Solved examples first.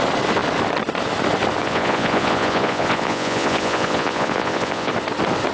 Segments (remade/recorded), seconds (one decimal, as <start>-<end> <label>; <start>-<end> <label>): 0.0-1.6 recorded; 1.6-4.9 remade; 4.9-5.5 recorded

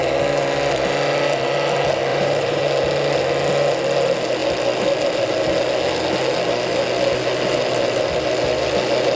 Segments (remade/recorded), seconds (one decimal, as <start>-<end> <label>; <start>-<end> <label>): 0.0-2.1 recorded; 2.1-2.6 remade; 2.6-9.2 recorded

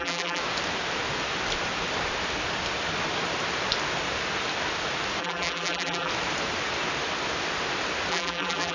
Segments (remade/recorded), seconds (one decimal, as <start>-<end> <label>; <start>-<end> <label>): 0.0-0.4 remade; 0.4-5.2 recorded; 5.2-6.1 remade; 6.1-8.1 recorded; 8.1-8.7 remade

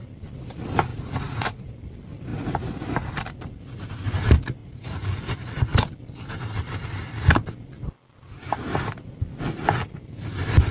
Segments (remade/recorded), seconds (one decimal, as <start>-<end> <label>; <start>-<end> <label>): 0.0-0.9 recorded; 0.9-1.7 remade; 1.7-4.6 recorded; 4.6-5.2 remade; 5.2-10.7 recorded

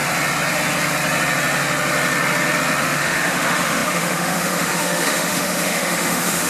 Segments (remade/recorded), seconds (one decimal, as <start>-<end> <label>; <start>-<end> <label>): 0.0-2.8 recorded; 2.8-6.5 remade